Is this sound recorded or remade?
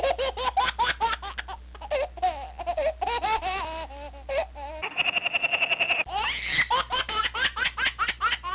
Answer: recorded